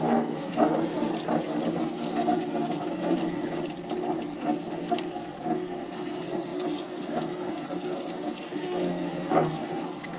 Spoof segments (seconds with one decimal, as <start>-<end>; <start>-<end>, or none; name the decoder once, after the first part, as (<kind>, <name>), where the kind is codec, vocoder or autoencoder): 0.0-1.1 (codec, SNAC); 1.7-3.2; 4.4-10.2